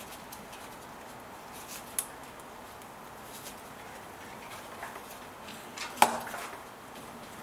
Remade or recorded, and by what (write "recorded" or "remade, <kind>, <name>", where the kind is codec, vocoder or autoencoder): recorded